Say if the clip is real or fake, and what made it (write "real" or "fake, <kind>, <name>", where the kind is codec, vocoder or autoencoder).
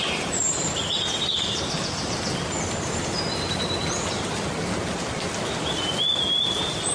real